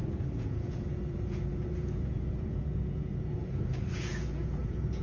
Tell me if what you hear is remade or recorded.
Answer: remade